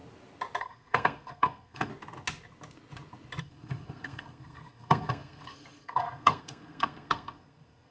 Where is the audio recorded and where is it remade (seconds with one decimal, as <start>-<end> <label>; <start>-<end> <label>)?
0.0-0.6 recorded; 0.6-1.9 remade; 1.9-3.4 recorded; 3.4-7.9 remade